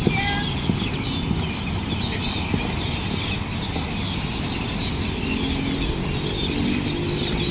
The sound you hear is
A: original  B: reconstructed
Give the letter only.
A